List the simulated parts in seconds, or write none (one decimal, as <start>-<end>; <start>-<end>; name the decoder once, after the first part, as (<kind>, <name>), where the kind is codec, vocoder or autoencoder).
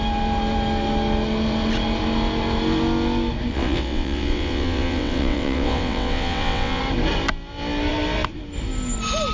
3.5-6.8 (vocoder, WaveNeXt)